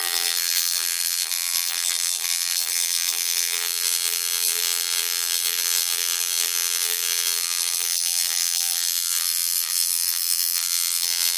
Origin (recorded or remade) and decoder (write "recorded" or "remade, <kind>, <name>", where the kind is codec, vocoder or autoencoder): remade, vocoder, BigVGAN v2